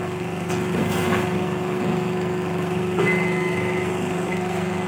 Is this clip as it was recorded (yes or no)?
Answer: no